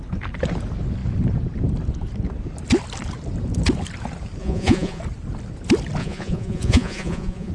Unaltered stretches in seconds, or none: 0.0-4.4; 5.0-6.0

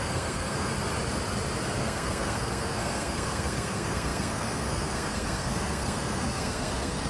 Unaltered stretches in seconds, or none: 0.7-1.8

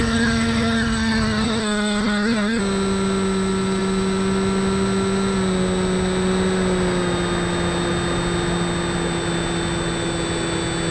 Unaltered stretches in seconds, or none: 2.6-10.9

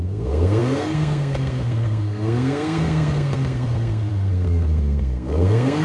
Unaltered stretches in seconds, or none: none

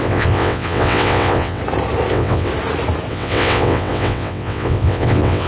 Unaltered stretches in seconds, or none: 1.6-2.1; 2.5-3.1

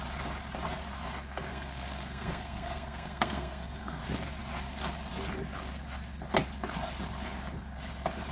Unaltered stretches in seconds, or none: 0.0-1.5; 4.0-8.3

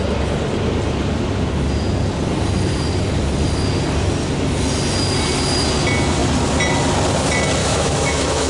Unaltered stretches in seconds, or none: 0.0-7.6

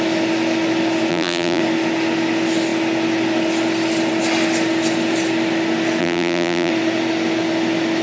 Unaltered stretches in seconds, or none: 0.0-1.1; 1.6-6.0; 6.7-8.0